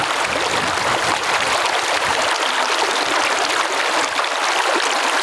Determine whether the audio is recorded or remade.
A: recorded